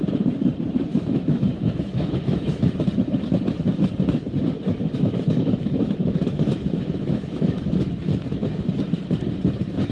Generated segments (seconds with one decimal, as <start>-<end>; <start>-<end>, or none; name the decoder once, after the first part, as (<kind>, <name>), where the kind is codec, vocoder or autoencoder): 0.9-2.6 (autoencoder, DAC-VAE); 4.8-7.9

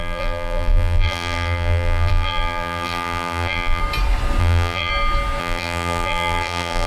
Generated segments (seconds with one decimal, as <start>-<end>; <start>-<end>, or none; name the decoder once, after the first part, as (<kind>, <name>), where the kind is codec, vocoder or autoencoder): 0.0-3.8 (vocoder, BigVGAN v2); 4.4-4.9; 5.4-6.9

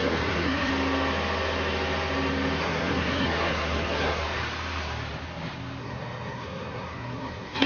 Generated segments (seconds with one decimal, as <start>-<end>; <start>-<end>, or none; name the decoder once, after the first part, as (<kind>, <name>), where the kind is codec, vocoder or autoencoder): 0.0-0.7 (codec, SNAC); 2.6-4.4; 5.8-7.7

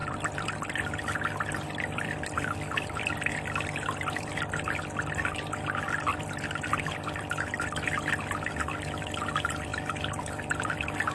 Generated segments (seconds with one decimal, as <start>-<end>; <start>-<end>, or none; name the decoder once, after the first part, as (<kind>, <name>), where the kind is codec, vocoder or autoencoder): 0.0-4.8 (vocoder, BigVGAN v2); 6.1-6.7

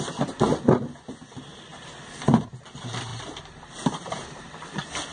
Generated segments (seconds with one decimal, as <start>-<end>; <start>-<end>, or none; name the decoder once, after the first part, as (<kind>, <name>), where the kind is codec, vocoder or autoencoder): 3.1-4.5 (vocoder, BigVGAN v2)

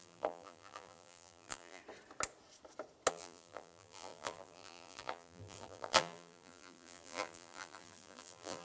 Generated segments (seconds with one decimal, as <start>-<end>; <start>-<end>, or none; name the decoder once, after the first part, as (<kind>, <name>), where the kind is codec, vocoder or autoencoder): 0.0-1.8 (vocoder, BigVGAN v2); 3.1-8.6

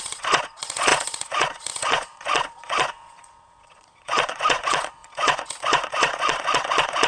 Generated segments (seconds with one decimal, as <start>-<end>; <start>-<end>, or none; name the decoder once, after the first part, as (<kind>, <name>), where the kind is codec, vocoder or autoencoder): 0.0-7.1 (vocoder, Vocos)

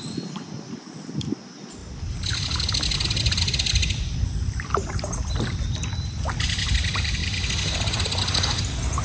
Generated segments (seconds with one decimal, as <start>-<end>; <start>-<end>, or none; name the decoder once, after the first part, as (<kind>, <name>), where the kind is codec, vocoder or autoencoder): none